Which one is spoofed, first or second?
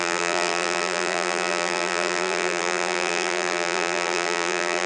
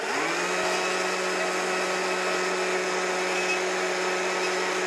first